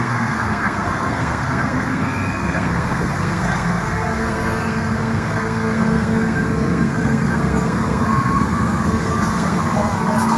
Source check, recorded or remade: remade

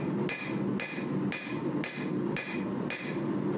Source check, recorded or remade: recorded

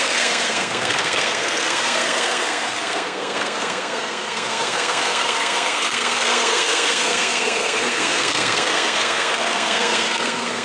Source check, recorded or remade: remade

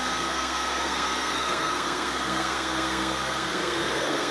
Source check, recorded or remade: remade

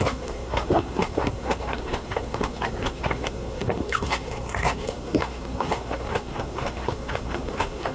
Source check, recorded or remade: remade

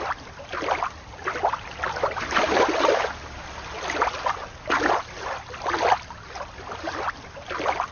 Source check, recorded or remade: recorded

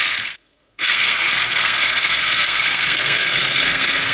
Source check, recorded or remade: remade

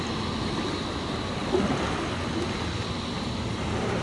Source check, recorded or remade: recorded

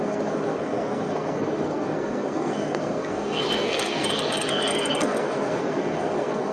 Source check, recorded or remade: remade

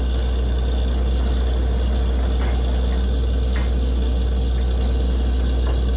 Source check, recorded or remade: recorded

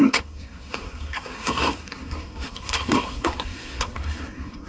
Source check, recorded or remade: remade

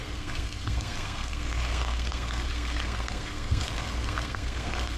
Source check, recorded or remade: remade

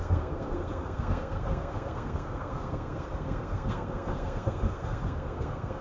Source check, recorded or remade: remade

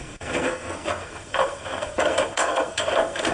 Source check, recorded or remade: remade